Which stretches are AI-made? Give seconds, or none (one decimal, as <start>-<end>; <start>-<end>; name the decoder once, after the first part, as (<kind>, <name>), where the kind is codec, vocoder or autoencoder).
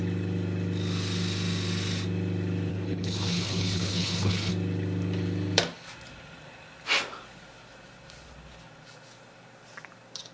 2.7-4.5 (codec, HILCodec)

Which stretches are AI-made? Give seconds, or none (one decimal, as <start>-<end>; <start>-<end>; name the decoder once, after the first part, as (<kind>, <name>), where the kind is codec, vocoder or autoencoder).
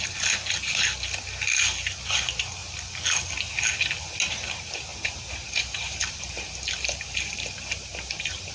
4.9-8.5 (vocoder, BigVGAN v2)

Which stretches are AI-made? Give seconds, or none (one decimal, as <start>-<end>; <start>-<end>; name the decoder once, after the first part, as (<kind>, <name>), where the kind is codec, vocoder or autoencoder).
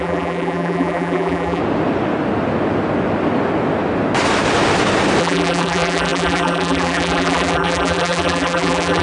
0.0-1.6 (vocoder, BigVGAN v2); 5.2-9.0